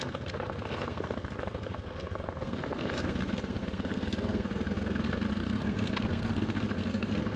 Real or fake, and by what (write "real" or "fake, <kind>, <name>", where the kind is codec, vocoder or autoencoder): fake, codec, SNAC